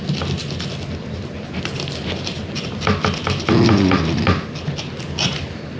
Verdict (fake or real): real